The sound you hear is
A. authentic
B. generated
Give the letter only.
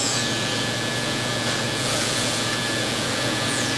B